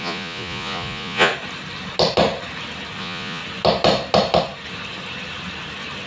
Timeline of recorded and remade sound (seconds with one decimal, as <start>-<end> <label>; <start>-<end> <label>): 0.0-1.3 remade; 1.3-3.0 recorded; 3.0-3.4 remade; 3.4-6.1 recorded